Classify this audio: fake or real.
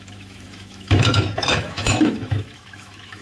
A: fake